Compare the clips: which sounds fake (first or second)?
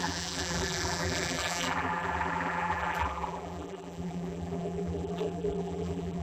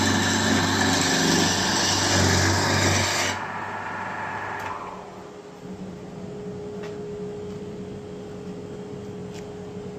first